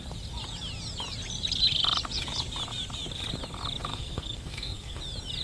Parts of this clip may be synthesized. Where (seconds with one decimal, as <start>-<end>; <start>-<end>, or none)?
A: 3.9-5.0